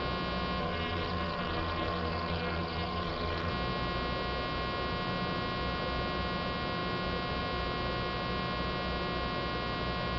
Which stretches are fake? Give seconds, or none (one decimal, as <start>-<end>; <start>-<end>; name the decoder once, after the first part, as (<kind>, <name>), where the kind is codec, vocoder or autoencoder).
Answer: 0.6-3.5 (codec, SNAC)